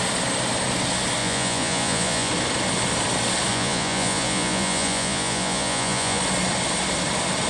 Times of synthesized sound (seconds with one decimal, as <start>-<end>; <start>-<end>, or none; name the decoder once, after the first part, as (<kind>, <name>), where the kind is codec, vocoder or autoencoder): 1.2-2.3 (vocoder, Vocos); 3.5-6.2